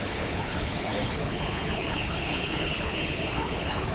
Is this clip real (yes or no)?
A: no